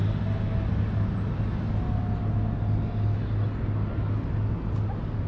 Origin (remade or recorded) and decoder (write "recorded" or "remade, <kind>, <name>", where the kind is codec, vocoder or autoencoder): recorded